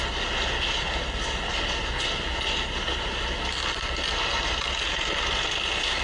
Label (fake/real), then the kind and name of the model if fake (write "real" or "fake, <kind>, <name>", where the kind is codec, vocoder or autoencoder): real